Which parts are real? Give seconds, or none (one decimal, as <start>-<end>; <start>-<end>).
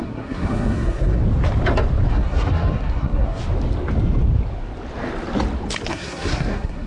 1.2-2.1; 3.4-5.9